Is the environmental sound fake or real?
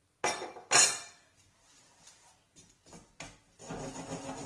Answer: real